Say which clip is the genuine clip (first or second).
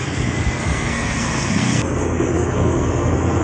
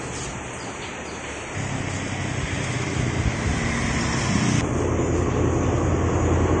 second